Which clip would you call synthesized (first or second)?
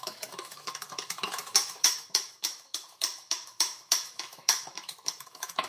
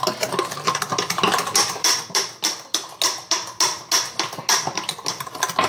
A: first